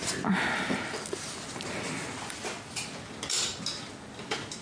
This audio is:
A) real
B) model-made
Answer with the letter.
A